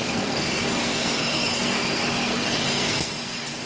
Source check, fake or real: fake